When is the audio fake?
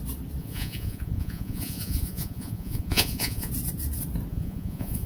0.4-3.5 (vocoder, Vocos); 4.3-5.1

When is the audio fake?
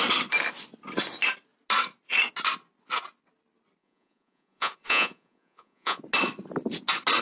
3.8-6.0 (vocoder, Vocos)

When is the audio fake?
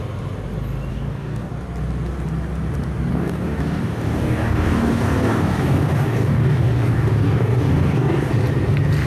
0.9-1.5 (codec, DAC); 3.1-8.3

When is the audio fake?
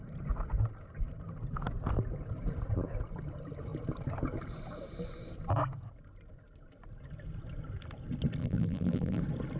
8.4-9.2 (vocoder, BigVGAN v2)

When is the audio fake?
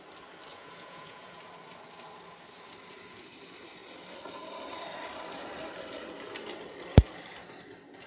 0.5-1.4 (vocoder, Vocos)